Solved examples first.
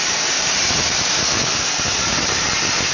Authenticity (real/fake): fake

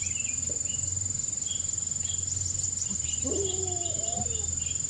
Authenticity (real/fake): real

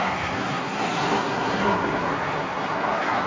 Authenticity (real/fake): fake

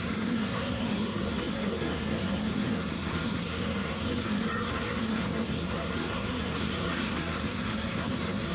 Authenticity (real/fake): fake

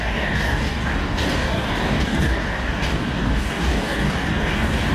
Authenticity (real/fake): fake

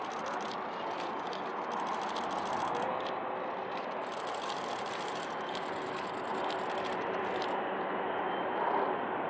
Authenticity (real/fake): real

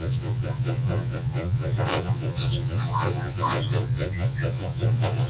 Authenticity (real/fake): fake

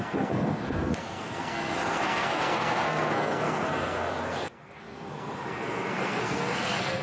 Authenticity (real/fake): fake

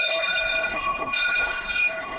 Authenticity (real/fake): fake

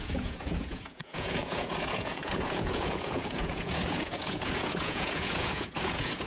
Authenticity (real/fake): fake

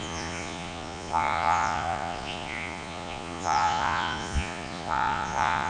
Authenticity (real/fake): fake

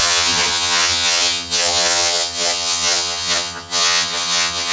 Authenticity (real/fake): fake